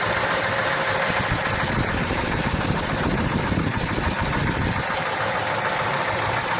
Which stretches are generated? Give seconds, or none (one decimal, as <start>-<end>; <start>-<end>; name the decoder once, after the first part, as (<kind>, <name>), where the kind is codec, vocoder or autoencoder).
none